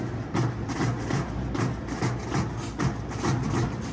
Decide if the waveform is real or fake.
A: real